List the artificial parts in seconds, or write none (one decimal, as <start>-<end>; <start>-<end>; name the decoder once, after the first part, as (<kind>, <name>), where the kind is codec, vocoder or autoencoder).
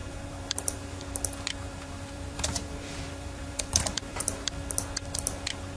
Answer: 0.0-1.0 (vocoder, BigVGAN v2); 1.6-4.5